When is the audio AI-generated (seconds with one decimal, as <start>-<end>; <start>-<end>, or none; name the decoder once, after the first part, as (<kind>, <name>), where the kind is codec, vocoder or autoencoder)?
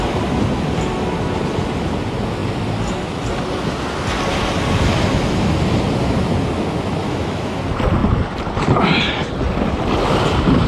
7.0-7.6 (autoencoder, DAC-VAE)